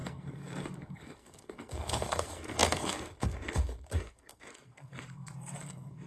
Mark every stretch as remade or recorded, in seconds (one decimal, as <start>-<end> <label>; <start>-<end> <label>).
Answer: 0.0-6.1 remade

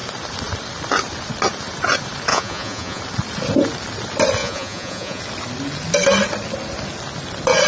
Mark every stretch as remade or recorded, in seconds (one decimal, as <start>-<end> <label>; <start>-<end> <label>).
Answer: 0.0-2.3 recorded; 2.3-3.0 remade; 3.0-4.4 recorded; 4.4-5.2 remade; 5.2-7.7 recorded

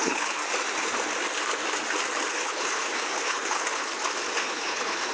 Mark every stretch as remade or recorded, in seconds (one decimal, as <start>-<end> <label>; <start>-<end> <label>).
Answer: 0.0-0.4 remade; 0.4-2.3 recorded; 2.3-3.9 remade; 3.9-4.4 recorded; 4.4-5.1 remade

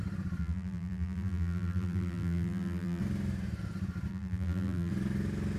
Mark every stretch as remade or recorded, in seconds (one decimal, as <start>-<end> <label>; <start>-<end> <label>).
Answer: 0.0-0.4 recorded; 0.4-3.0 remade; 3.0-4.1 recorded; 4.1-4.9 remade; 4.9-5.6 recorded

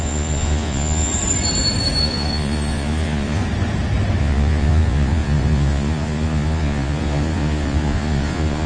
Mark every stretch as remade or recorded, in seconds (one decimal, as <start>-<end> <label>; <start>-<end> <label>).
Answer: 0.0-1.1 remade; 1.1-2.0 recorded; 2.0-3.4 remade; 3.4-4.2 recorded; 4.2-8.7 remade